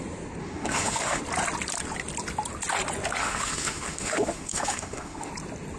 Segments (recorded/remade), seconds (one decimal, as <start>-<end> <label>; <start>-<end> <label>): 0.0-0.4 recorded; 0.4-1.2 remade; 1.2-3.2 recorded; 3.2-5.3 remade; 5.3-5.8 recorded